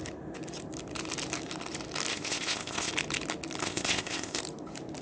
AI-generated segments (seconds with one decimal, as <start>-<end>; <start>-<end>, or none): 2.1-2.9; 3.6-4.4